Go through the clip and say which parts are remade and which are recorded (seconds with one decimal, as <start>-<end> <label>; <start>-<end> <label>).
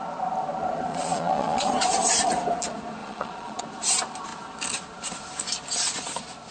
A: 0.0-0.9 recorded; 0.9-1.7 remade; 1.7-3.0 recorded; 3.0-3.6 remade; 3.6-6.5 recorded